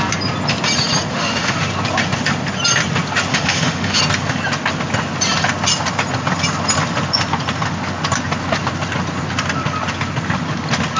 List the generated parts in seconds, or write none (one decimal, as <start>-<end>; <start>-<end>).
1.1-1.6; 3.3-4.0